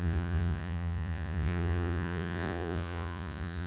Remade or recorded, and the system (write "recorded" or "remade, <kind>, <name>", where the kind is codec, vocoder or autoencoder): remade, vocoder, Vocos